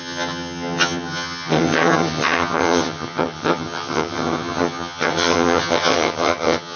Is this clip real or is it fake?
fake